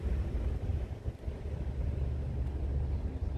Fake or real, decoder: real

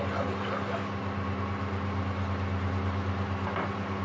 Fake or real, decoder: real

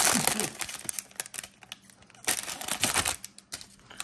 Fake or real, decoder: real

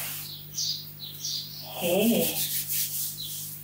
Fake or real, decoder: real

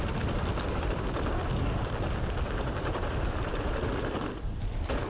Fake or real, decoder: fake, vocoder, BigVGAN v2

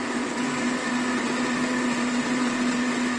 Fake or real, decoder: real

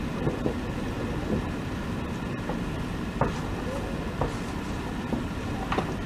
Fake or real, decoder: real